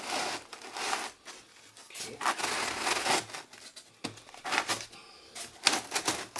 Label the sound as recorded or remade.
recorded